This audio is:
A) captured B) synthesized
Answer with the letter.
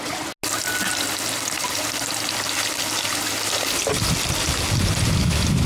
A